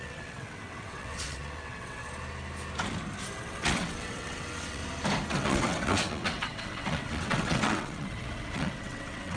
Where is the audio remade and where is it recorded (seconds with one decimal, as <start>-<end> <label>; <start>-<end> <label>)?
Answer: 0.0-2.0 remade; 2.0-3.4 recorded; 3.4-4.8 remade; 4.8-5.3 recorded; 5.3-9.4 remade